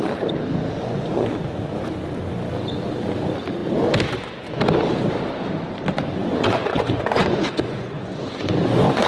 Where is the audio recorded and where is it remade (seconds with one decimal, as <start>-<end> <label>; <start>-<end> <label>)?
0.0-0.8 recorded; 0.8-1.4 remade; 1.4-6.2 recorded; 6.2-9.1 remade